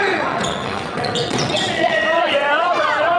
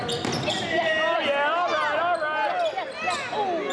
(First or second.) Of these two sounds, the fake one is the first